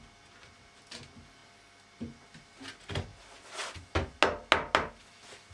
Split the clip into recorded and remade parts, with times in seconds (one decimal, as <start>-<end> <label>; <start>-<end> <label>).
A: 0.0-5.5 recorded